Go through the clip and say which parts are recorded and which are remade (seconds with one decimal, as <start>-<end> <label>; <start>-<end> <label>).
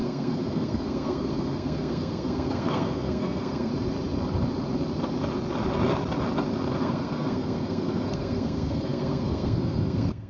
0.0-3.7 remade; 3.7-6.8 recorded; 6.8-10.3 remade